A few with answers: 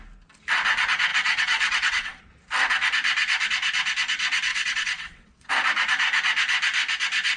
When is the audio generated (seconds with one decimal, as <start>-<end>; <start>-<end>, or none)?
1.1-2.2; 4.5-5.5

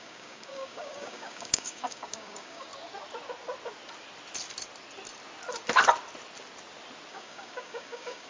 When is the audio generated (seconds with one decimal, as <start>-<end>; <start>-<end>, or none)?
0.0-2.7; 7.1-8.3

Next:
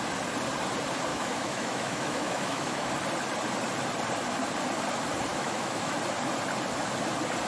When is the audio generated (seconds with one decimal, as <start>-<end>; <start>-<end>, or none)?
1.1-2.9; 5.3-5.9

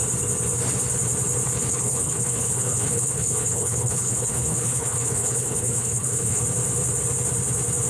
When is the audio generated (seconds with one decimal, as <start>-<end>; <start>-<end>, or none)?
1.7-6.4

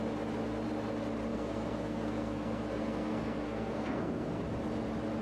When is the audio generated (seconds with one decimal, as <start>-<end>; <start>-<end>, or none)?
1.3-4.4